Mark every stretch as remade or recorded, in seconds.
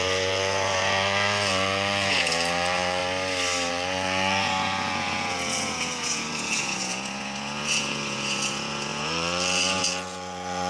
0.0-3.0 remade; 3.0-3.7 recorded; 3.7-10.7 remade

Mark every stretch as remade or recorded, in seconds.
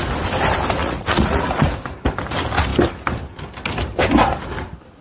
0.0-0.8 recorded; 0.8-1.7 remade; 1.7-5.0 recorded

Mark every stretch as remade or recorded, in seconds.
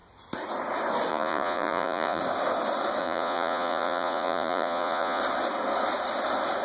0.0-1.1 recorded; 1.1-2.2 remade; 2.2-3.0 recorded; 3.0-5.2 remade; 5.2-6.6 recorded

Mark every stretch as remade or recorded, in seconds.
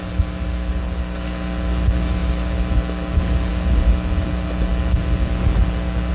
0.0-6.1 recorded